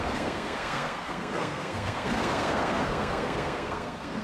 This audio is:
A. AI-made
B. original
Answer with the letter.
A